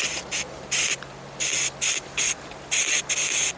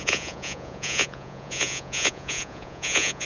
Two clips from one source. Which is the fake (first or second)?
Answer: second